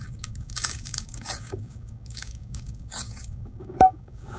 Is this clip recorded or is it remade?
remade